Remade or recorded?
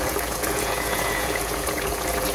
remade